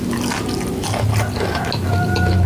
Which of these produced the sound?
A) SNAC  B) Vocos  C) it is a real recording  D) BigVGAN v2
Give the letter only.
C